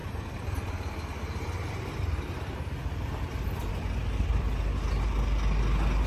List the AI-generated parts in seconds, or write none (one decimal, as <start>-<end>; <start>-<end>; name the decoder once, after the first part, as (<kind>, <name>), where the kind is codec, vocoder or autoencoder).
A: 0.0-3.7 (vocoder, BigVGAN v2)